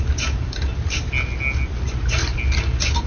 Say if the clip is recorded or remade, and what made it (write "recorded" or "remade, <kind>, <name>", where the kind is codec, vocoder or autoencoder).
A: recorded